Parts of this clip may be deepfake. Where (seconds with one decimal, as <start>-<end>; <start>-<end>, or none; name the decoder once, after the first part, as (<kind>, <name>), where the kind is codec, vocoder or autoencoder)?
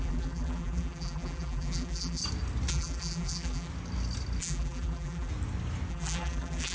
0.0-2.2 (vocoder, BigVGAN v2); 2.7-3.7; 4.4-5.3; 5.9-6.7